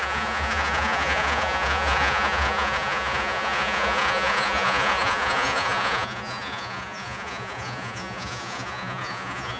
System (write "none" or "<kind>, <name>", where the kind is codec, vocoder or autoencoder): vocoder, Vocos